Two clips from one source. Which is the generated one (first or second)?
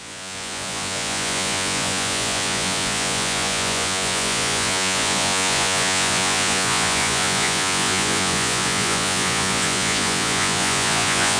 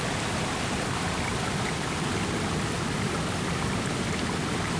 first